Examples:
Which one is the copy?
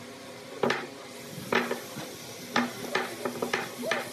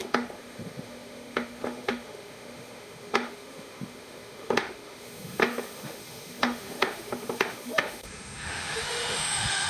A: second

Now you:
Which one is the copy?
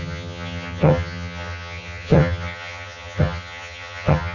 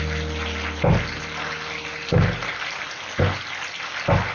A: first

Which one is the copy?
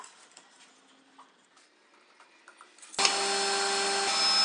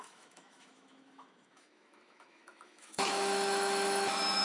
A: second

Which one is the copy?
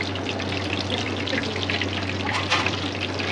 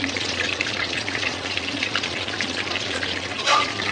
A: second